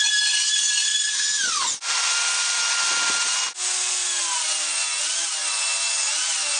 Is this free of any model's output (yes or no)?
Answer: yes